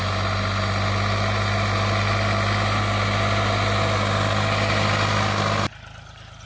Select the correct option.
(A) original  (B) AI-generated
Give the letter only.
A